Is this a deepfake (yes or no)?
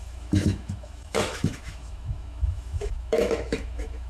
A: yes